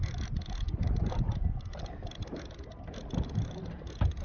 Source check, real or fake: real